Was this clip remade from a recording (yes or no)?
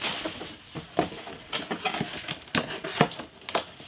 no